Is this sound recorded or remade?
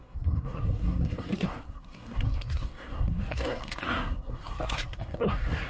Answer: remade